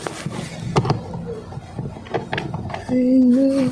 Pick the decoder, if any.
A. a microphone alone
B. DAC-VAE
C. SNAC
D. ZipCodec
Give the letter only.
A